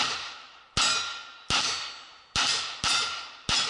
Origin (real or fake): real